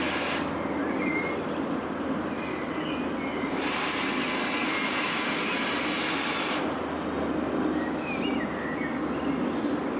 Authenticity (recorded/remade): recorded